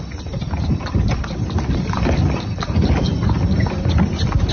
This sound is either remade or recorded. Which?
recorded